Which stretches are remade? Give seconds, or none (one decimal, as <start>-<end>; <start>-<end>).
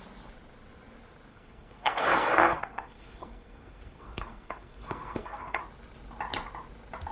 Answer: 1.3-5.6